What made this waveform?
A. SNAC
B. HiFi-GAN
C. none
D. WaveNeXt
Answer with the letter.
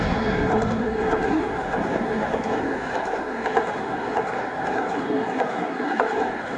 A